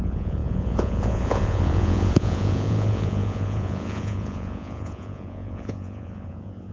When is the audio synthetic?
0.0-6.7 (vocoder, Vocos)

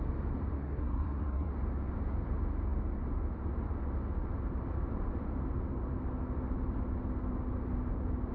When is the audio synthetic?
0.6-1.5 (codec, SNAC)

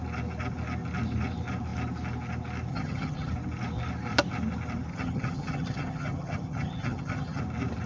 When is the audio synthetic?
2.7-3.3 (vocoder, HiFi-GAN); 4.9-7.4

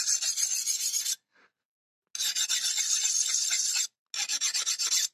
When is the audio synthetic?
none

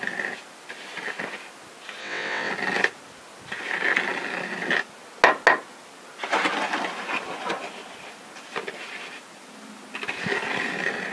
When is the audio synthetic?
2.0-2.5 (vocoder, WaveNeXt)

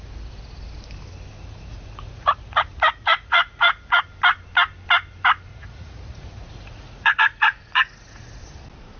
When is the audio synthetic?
1.3-4.0 (vocoder, Vocos); 5.5-8.4

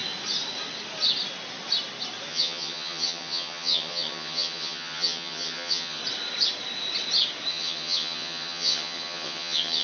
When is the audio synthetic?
2.3-6.0 (vocoder, HiFi-GAN); 7.5-9.8